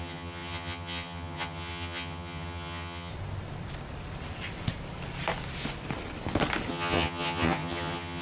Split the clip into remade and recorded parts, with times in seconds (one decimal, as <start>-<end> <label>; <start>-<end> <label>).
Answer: 0.0-3.1 remade; 3.1-6.7 recorded; 6.7-8.2 remade